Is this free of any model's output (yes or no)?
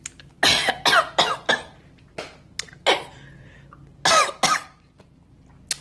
yes